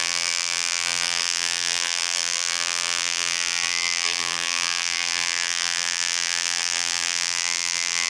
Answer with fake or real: fake